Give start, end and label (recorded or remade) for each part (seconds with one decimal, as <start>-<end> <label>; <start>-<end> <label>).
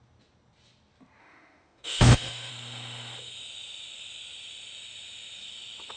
0.0-1.2 recorded; 1.2-2.5 remade; 2.5-6.0 recorded